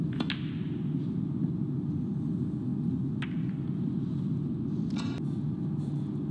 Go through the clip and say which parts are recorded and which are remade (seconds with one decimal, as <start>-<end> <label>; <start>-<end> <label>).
0.0-6.3 recorded